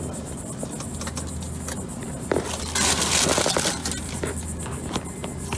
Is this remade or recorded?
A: recorded